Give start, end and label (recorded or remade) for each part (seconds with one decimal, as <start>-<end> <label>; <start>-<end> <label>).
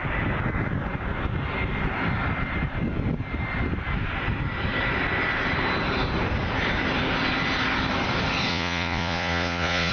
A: 0.0-8.5 recorded; 8.5-9.9 remade